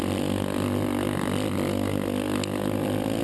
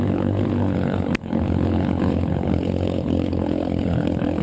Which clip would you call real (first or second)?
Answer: first